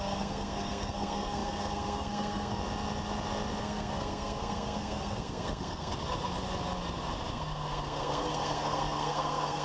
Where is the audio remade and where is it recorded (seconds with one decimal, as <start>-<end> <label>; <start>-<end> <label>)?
0.0-2.6 remade; 2.6-3.6 recorded; 3.6-5.9 remade; 5.9-7.3 recorded; 7.3-9.6 remade